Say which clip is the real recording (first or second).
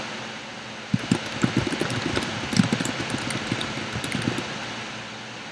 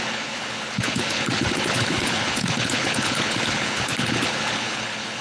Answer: first